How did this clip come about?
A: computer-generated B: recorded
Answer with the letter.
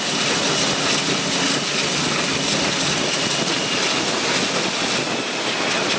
B